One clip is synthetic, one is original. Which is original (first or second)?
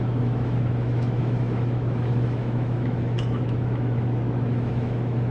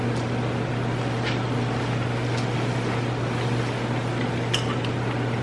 second